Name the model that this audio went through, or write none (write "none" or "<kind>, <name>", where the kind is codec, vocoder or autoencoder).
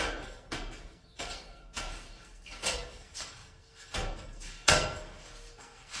codec, SNAC